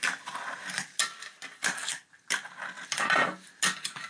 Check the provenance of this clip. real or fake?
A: real